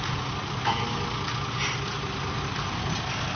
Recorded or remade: recorded